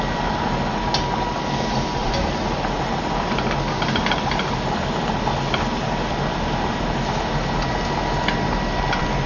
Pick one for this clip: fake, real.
real